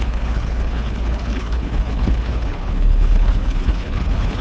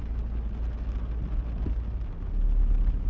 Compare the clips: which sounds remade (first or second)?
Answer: first